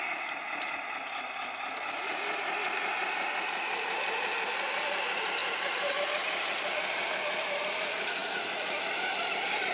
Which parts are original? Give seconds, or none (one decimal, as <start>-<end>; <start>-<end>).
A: 0.0-9.7